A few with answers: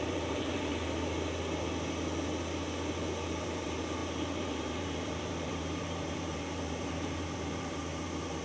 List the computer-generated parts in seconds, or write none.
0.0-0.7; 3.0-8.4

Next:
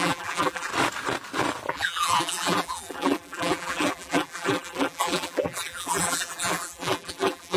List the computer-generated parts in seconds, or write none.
0.0-0.7; 1.7-7.6

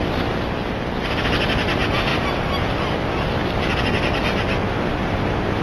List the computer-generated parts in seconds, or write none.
none